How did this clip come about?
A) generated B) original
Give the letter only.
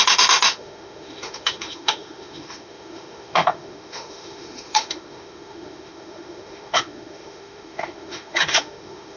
A